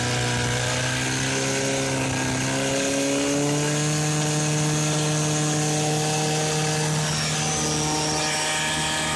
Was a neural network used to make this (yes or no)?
no